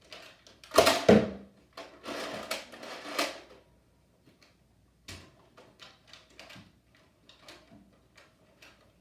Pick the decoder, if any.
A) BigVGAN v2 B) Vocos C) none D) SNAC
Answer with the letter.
C